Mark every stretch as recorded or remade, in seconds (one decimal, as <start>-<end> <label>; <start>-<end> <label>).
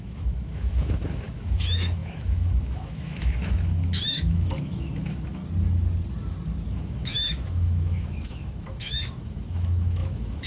0.0-5.4 remade; 5.4-6.7 recorded; 6.7-10.5 remade